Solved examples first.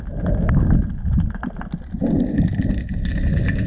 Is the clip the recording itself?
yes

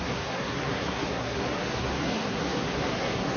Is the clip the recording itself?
no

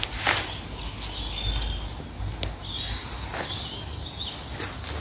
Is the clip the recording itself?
yes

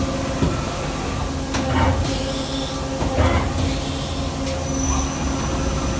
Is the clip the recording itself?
yes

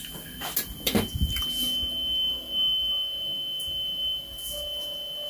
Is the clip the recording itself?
yes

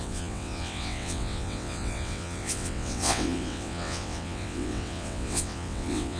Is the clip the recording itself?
no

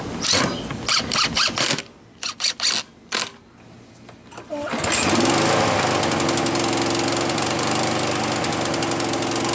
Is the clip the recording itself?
yes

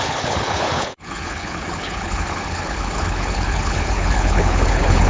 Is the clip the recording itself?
no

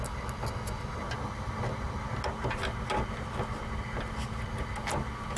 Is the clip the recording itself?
yes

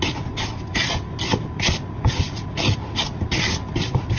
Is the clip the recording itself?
yes